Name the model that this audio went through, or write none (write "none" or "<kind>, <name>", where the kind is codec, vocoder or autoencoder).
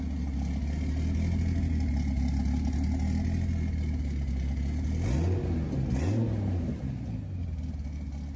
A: none